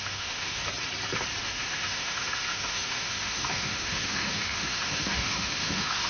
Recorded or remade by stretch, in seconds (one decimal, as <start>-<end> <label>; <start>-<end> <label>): 0.0-0.6 remade; 0.6-1.4 recorded; 1.4-6.1 remade